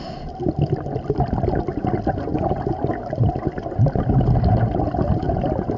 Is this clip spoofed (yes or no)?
no